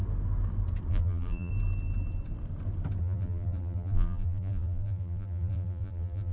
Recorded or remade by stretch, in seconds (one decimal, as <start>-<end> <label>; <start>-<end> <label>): 0.0-0.9 recorded; 0.9-1.5 remade; 1.5-3.0 recorded; 3.0-6.3 remade